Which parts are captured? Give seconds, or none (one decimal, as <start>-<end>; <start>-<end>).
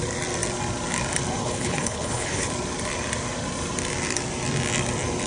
0.0-1.4; 2.5-5.3